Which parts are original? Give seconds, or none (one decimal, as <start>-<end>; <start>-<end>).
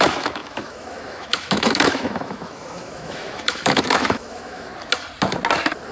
4.7-5.9